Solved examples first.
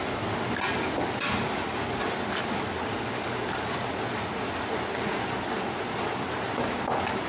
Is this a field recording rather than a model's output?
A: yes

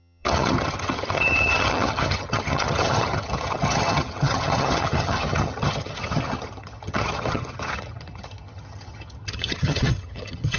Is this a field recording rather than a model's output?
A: no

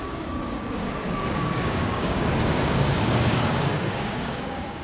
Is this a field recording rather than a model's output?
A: no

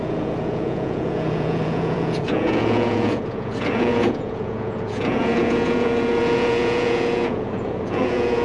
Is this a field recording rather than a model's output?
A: no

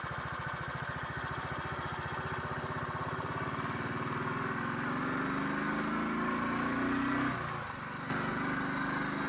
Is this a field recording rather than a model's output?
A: yes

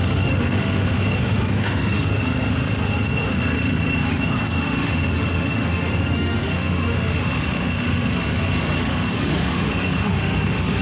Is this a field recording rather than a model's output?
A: no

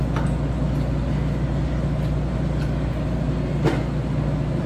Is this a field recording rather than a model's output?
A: yes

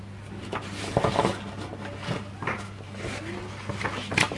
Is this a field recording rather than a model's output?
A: yes